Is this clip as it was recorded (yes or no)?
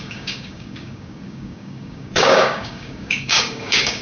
no